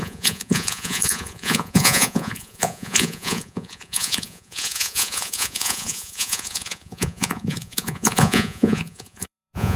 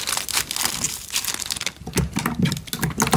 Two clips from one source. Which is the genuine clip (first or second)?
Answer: second